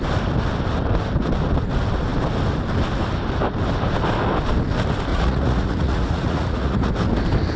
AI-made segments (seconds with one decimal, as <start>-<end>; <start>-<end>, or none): 5.1-6.9